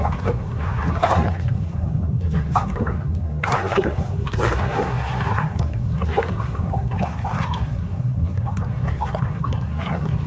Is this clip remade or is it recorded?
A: remade